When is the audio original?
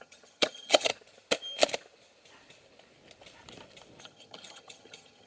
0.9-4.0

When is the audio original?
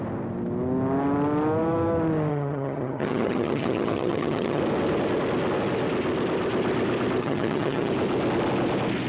0.0-2.3; 4.6-7.2; 7.9-9.1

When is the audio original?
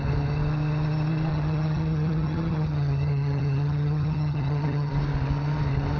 0.0-1.3; 4.9-6.0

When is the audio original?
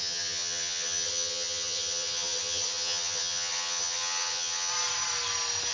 4.7-5.7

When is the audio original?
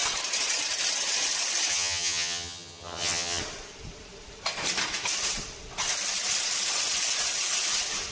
0.0-1.7; 3.4-8.1